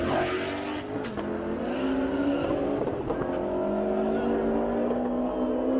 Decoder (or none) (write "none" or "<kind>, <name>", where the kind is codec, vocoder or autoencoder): none